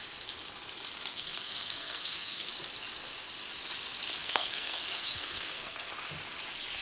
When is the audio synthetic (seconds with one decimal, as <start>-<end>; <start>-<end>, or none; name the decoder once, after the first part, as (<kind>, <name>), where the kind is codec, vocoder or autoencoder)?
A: 1.1-2.5 (codec, SNAC); 4.2-5.9